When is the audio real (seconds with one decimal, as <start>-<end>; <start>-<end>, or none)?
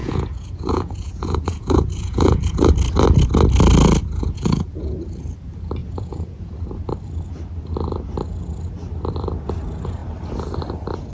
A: 2.7-4.0; 5.0-5.8; 6.4-11.1